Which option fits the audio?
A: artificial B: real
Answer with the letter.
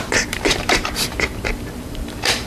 A